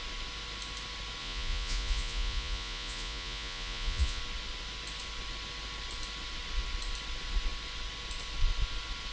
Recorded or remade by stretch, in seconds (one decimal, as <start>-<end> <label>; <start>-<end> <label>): 0.0-1.2 recorded; 1.2-4.2 remade; 4.2-9.1 recorded